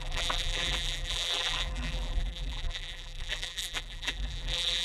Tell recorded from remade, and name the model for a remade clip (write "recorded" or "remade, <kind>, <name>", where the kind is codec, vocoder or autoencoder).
remade, vocoder, BigVGAN v2